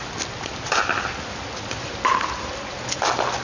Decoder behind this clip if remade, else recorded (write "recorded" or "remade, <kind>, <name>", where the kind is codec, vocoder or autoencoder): recorded